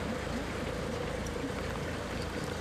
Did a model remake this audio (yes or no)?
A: yes